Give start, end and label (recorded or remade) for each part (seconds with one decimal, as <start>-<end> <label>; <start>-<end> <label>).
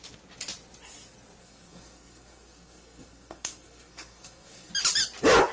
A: 0.0-1.4 recorded; 1.4-4.7 remade; 4.7-5.5 recorded